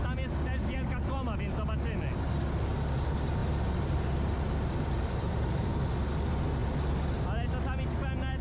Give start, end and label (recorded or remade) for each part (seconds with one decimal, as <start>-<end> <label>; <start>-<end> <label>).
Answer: 0.0-3.4 recorded; 3.4-5.7 remade; 5.7-8.4 recorded